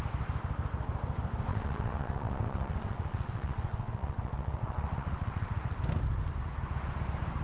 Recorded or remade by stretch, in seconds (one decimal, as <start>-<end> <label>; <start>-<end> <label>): 0.0-1.5 recorded; 1.5-5.8 remade; 5.8-7.4 recorded